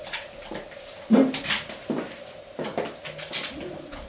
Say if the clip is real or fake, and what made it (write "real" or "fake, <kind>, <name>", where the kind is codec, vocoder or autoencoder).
real